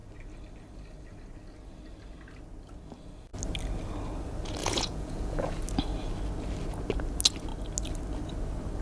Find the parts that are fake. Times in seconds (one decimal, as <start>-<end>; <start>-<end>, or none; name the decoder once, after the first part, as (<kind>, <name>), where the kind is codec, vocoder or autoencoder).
4.6-5.6 (vocoder, Vocos)